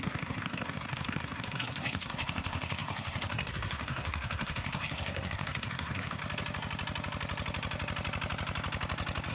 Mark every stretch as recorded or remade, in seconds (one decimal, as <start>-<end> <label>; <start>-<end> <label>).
0.0-6.2 remade; 6.2-9.3 recorded